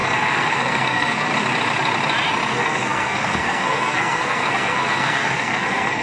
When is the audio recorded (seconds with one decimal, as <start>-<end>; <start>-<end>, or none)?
1.3-2.5